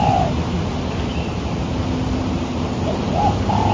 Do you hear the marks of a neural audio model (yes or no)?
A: no